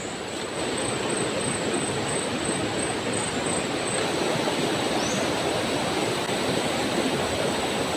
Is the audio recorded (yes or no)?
yes